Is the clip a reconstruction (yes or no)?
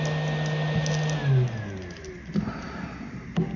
no